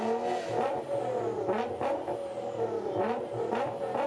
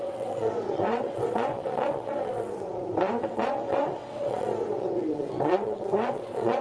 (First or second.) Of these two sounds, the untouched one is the first